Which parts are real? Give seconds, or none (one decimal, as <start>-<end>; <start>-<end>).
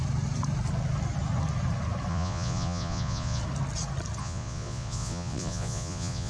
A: 0.0-2.1; 3.4-4.2